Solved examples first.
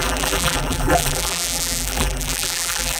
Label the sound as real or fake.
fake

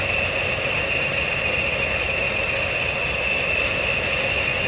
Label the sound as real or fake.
real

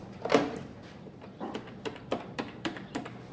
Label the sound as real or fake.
fake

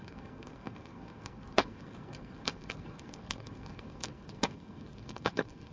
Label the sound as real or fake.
fake